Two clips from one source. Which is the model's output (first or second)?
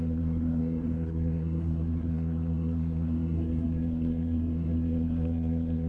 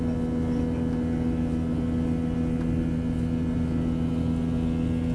first